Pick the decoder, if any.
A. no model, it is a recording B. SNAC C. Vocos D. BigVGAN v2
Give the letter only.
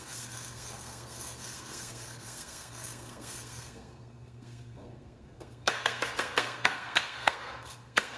B